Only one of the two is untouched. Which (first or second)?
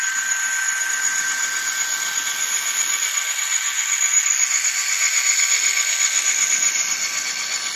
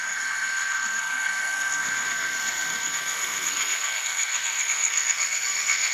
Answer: first